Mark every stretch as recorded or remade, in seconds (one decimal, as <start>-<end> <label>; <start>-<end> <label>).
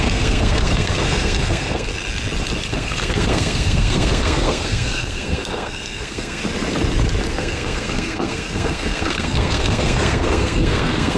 0.0-1.9 remade; 1.9-2.7 recorded; 2.7-6.4 remade; 6.4-7.3 recorded; 7.3-11.2 remade